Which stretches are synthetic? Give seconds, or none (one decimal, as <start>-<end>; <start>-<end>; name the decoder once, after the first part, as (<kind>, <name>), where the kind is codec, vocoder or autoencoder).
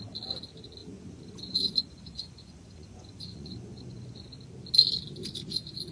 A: 0.8-4.3 (vocoder, Vocos)